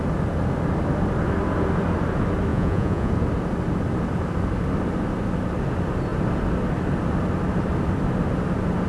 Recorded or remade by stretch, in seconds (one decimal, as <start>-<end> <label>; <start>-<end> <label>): 0.0-2.5 recorded; 2.5-3.1 remade; 3.1-8.9 recorded